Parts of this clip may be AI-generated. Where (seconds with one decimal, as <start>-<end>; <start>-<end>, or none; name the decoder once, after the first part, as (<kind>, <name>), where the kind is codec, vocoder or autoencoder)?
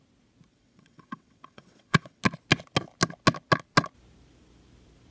0.5-2.2 (vocoder, WaveNeXt)